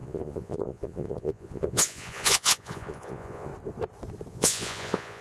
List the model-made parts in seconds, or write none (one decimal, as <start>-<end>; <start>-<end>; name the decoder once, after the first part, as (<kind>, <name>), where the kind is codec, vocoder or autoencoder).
0.0-3.5 (vocoder, Vocos); 4.3-5.2